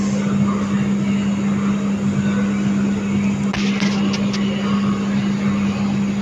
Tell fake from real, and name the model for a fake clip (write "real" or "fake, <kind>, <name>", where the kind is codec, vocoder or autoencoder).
real